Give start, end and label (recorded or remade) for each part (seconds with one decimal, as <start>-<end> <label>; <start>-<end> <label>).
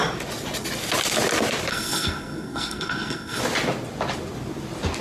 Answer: 0.0-1.7 recorded; 1.7-3.4 remade; 3.4-5.0 recorded